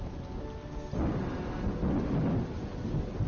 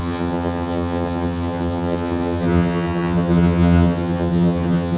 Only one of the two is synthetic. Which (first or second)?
second